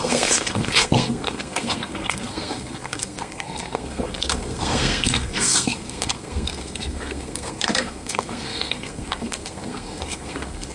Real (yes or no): no